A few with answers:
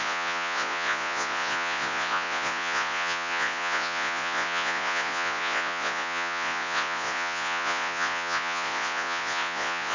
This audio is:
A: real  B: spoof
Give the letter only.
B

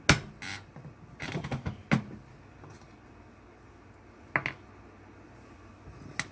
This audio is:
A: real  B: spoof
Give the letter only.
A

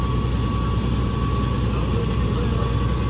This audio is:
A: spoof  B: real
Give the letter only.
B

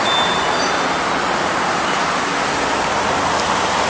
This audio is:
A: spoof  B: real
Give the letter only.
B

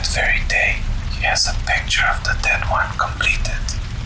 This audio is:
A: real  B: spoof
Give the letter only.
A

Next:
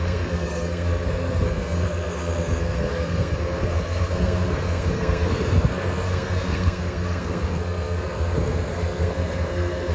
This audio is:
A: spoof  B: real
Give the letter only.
A